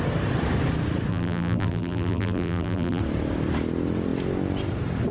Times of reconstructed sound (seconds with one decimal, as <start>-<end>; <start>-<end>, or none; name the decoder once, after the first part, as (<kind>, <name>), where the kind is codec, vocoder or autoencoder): 1.1-3.0 (vocoder, BigVGAN v2)